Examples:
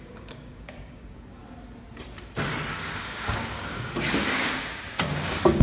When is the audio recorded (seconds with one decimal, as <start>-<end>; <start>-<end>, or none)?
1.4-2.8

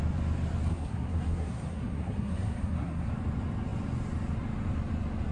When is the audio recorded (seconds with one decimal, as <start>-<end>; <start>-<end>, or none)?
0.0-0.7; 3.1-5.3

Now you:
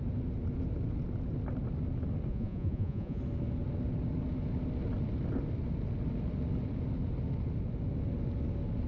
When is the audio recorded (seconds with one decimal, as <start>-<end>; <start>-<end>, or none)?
0.0-2.3; 3.2-8.9

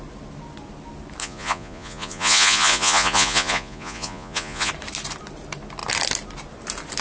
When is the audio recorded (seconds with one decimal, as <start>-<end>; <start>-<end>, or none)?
0.0-1.2; 4.7-7.0

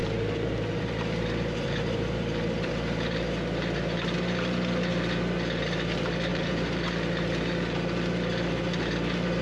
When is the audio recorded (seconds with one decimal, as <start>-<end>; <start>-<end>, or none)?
3.2-6.3; 6.9-9.4

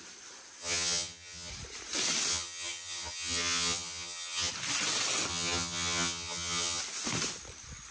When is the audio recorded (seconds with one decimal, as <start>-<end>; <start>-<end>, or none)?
0.0-0.6; 1.5-2.3; 4.5-5.3; 6.8-7.9